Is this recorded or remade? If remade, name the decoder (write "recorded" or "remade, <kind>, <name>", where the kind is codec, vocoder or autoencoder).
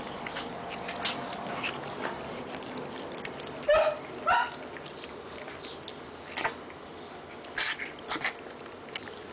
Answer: recorded